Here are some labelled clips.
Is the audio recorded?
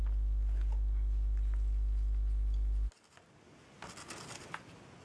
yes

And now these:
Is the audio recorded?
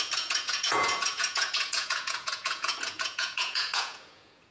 no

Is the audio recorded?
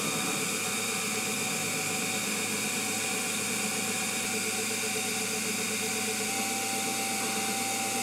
yes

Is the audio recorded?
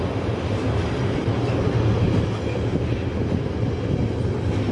yes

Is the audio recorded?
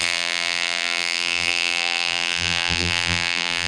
no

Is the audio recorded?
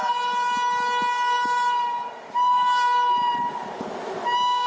yes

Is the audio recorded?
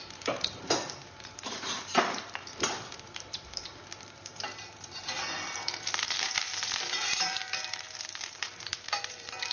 no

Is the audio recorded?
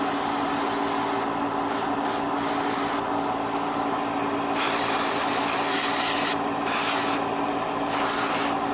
yes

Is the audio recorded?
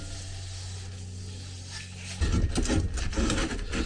yes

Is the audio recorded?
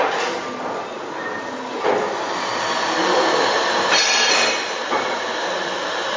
yes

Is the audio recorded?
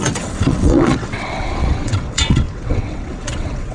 no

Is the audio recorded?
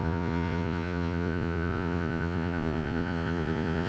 no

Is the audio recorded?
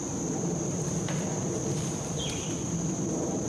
yes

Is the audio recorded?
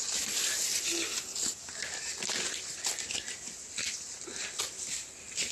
yes